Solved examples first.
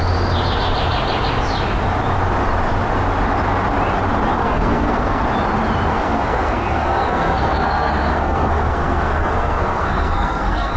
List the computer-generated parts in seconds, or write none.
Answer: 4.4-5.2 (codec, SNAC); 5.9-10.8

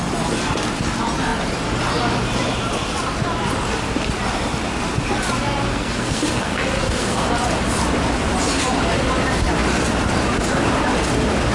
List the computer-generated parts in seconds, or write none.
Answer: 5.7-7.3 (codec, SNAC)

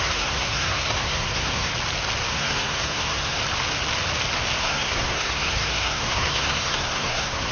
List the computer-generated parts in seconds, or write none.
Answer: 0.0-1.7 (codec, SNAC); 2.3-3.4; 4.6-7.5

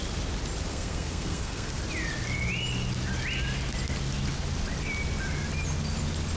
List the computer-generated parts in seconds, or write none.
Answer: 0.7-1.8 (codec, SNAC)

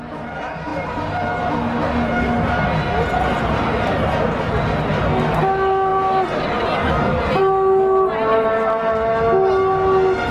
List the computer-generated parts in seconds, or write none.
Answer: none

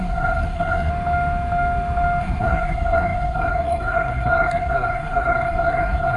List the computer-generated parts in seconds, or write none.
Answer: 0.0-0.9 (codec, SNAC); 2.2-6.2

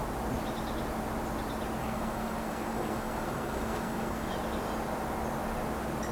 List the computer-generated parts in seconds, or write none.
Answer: 1.8-4.3 (codec, SNAC)

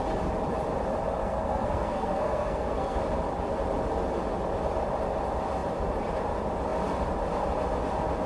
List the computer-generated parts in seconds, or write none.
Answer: 1.2-3.0 (codec, SNAC)